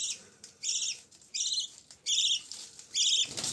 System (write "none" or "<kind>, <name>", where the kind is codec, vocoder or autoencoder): none